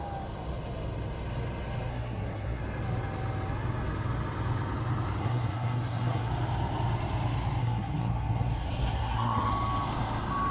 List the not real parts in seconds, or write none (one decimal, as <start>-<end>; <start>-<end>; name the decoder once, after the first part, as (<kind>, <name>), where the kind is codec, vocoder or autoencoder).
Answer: 1.9-2.6 (codec, SNAC); 5.2-6.3; 7.6-9.5